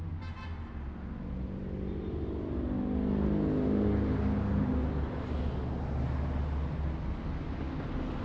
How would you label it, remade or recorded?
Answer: recorded